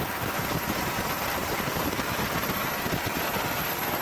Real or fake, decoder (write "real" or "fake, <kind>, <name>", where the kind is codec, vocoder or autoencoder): fake, vocoder, BigVGAN v2